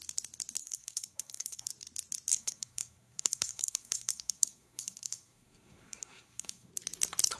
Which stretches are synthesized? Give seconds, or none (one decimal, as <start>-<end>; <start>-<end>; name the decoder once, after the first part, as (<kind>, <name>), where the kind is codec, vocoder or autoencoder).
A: 0.6-1.7 (codec, SNAC); 2.3-6.7